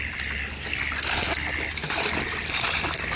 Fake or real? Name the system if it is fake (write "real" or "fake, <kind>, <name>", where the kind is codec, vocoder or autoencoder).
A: real